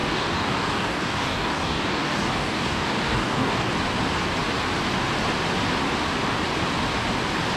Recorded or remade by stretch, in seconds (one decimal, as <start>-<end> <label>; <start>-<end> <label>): 0.0-3.7 remade; 3.7-7.6 recorded